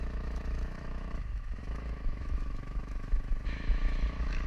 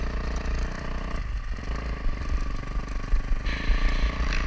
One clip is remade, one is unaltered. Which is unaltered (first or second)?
second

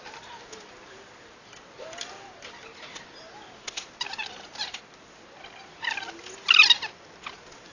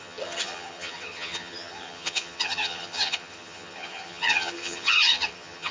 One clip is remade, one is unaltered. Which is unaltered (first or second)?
first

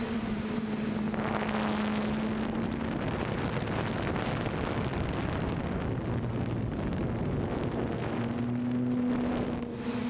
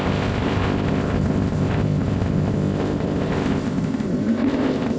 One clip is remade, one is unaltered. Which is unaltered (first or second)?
first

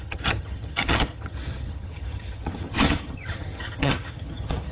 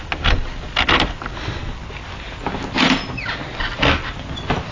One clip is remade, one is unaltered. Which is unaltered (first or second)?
second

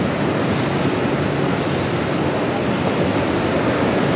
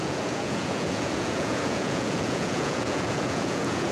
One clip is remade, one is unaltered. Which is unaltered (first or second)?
first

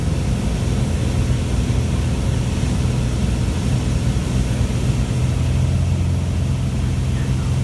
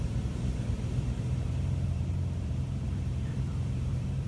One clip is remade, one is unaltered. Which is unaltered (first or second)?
first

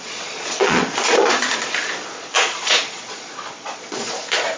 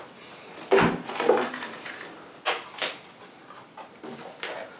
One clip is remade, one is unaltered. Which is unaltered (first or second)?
second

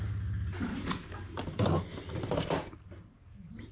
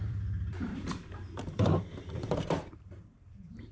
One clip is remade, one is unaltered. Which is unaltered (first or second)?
first